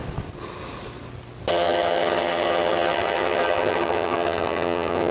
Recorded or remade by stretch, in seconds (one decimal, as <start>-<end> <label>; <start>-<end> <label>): 0.0-1.5 recorded; 1.5-5.1 remade